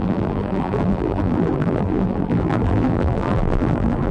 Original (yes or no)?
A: no